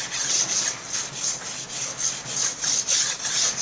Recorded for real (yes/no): yes